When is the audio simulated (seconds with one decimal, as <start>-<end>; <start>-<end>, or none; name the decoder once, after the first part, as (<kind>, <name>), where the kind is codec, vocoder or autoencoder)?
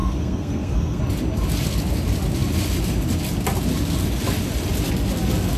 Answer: 0.0-1.0 (codec, SNAC)